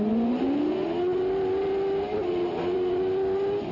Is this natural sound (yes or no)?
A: yes